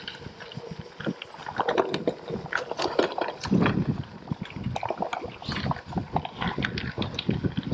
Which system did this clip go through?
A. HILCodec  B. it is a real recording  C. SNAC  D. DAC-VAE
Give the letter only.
B